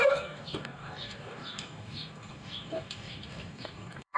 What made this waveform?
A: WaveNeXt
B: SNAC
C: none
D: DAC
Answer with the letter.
D